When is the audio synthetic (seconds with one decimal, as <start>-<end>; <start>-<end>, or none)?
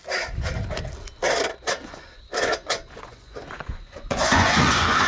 1.8-5.1